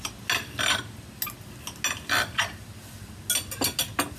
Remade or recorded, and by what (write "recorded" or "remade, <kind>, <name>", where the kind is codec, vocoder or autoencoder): recorded